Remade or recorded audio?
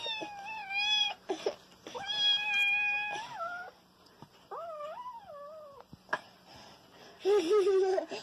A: recorded